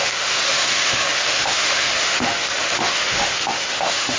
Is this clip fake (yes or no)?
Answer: yes